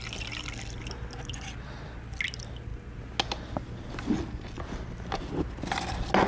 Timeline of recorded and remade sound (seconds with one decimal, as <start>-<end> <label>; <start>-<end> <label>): 0.0-6.3 recorded